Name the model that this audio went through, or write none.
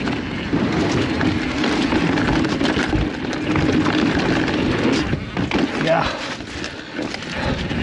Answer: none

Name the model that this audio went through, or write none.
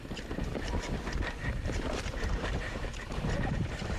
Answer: vocoder, BigVGAN v2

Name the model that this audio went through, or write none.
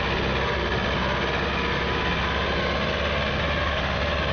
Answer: none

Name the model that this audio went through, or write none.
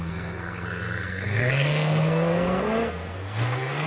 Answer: codec, SNAC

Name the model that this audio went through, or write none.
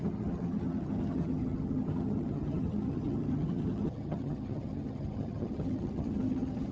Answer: vocoder, HiFi-GAN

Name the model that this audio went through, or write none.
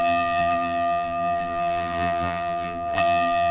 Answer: vocoder, BigVGAN v2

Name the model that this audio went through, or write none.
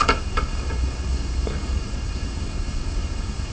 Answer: codec, DAC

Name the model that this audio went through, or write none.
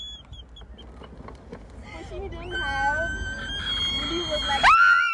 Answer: none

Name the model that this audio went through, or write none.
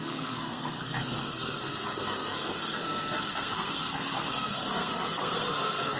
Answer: codec, SNAC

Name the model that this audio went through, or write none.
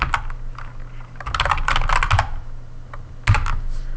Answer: none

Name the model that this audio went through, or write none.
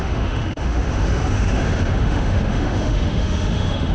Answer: autoencoder, DAC-VAE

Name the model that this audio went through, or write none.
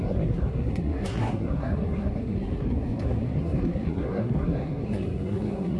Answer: codec, SNAC